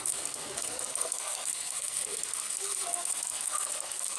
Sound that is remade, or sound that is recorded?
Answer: remade